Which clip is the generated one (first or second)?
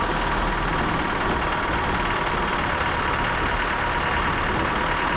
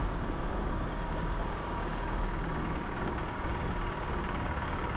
second